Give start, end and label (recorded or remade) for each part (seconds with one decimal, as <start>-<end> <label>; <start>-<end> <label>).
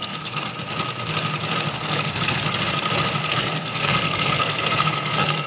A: 0.0-0.5 remade; 0.5-1.7 recorded; 1.7-2.4 remade; 2.4-3.3 recorded; 3.3-5.5 remade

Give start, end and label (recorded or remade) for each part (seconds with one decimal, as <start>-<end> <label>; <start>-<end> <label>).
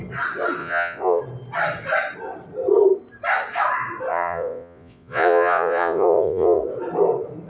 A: 0.0-0.6 recorded; 0.6-1.2 remade; 1.2-4.1 recorded; 4.1-6.6 remade; 6.6-7.5 recorded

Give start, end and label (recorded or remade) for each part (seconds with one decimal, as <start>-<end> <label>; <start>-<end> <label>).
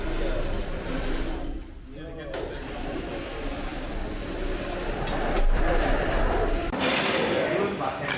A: 0.0-8.2 recorded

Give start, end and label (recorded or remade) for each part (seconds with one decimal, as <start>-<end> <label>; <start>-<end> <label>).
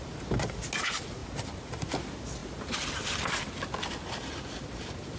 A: 0.0-1.2 recorded; 1.2-1.9 remade; 1.9-5.2 recorded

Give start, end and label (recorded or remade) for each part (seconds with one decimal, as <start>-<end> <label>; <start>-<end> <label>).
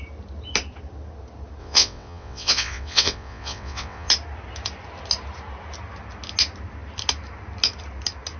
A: 0.0-1.6 recorded; 1.6-4.1 remade; 4.1-8.4 recorded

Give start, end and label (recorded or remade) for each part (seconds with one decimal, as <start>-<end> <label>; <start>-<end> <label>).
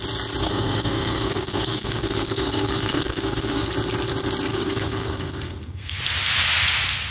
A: 0.0-0.4 recorded; 0.4-3.7 remade; 3.7-4.5 recorded; 4.5-6.0 remade; 6.0-7.1 recorded